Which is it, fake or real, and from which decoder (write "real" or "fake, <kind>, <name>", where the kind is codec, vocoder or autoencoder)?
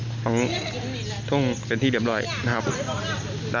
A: real